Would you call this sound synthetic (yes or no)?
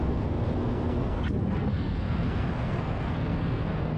yes